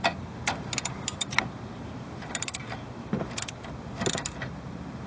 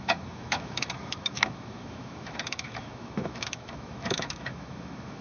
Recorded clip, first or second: first